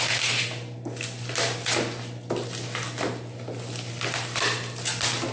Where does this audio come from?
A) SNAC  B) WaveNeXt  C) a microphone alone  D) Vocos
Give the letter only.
C